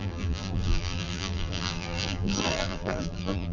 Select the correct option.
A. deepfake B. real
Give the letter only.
A